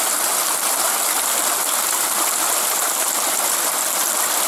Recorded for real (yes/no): yes